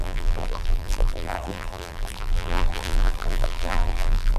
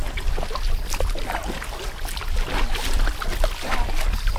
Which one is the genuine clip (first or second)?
second